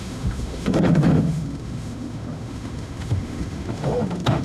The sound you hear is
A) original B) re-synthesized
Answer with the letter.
B